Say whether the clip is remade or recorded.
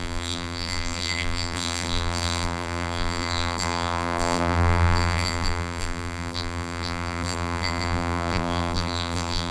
remade